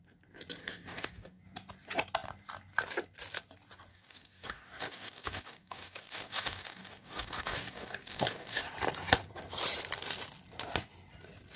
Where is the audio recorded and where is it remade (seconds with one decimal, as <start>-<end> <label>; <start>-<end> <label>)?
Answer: 0.0-0.6 recorded; 0.6-1.4 remade; 1.4-3.9 recorded; 3.9-8.6 remade; 8.6-11.6 recorded